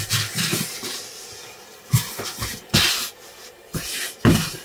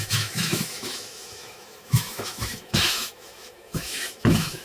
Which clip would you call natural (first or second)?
first